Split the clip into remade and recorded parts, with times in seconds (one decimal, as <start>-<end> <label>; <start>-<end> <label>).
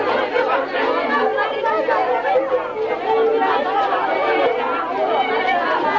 0.0-6.0 recorded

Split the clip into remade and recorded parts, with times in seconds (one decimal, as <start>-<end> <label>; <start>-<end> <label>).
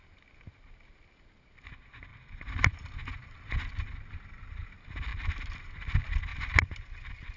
0.0-2.1 recorded; 2.1-2.7 remade; 2.7-5.1 recorded; 5.1-5.6 remade; 5.6-6.3 recorded; 6.3-7.4 remade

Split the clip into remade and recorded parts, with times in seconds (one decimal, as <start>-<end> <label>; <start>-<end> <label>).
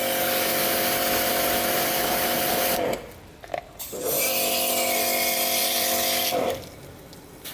0.0-5.6 recorded; 5.6-6.6 remade; 6.6-7.5 recorded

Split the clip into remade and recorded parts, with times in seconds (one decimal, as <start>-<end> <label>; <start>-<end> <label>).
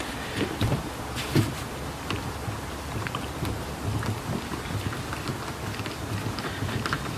0.0-5.3 remade; 5.3-6.3 recorded; 6.3-7.2 remade